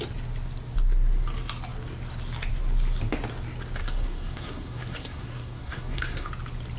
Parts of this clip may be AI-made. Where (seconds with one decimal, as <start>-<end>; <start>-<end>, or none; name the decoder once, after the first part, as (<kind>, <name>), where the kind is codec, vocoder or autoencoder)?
3.8-6.3 (codec, SNAC)